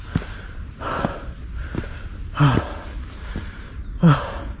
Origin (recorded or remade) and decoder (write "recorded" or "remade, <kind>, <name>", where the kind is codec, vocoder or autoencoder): recorded